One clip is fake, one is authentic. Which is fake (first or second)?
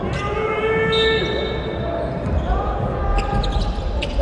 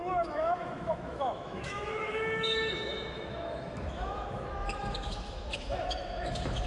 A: second